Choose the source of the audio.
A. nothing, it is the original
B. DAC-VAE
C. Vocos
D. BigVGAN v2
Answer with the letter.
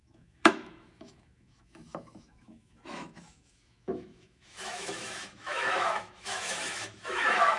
B